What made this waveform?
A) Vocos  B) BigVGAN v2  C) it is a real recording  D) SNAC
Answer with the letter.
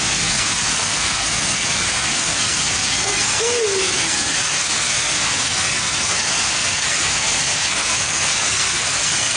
D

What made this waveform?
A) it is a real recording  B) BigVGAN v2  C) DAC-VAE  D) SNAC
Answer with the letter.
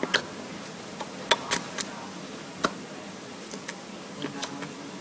A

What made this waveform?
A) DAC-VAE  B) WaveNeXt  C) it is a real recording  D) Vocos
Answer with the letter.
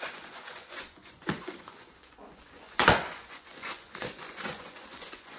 D